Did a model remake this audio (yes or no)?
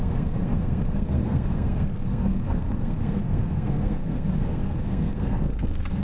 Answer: yes